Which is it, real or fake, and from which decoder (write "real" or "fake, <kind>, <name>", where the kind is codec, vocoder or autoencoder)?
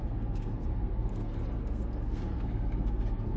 fake, codec, SNAC